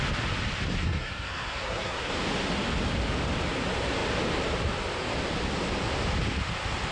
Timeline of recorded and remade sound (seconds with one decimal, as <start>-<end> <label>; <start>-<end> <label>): 0.0-0.7 recorded; 0.7-2.1 remade; 2.1-6.9 recorded